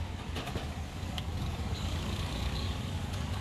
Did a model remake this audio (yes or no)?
yes